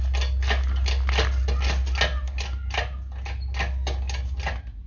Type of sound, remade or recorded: recorded